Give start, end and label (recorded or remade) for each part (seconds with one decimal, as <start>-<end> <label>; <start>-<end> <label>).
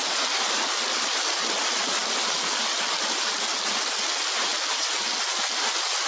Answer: 0.0-0.9 recorded; 0.9-2.3 remade; 2.3-6.1 recorded